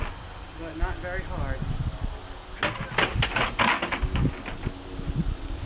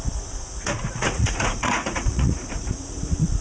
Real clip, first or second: first